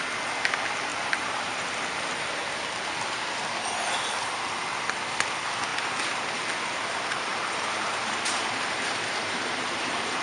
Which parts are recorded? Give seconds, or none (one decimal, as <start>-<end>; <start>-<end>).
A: 0.0-0.9; 1.7-7.3